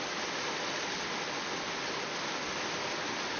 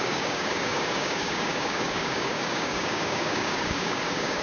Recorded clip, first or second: first